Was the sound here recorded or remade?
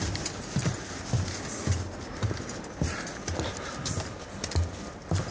recorded